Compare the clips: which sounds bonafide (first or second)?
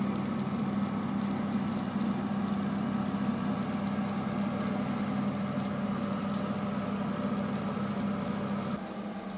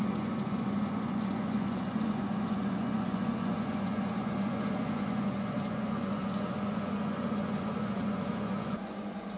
first